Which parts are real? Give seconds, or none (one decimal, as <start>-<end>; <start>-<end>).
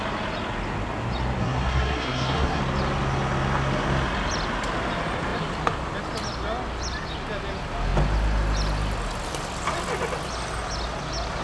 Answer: 0.0-1.4; 2.6-11.4